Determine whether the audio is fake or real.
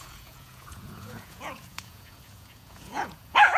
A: fake